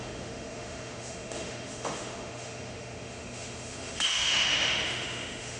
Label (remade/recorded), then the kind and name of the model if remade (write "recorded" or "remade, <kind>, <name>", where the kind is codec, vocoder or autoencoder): remade, autoencoder, DAC-VAE